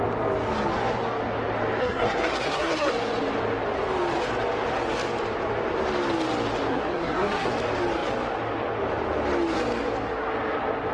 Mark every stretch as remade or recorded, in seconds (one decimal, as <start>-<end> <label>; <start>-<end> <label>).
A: 0.0-1.8 recorded; 1.8-2.9 remade; 2.9-6.7 recorded; 6.7-7.5 remade; 7.5-10.9 recorded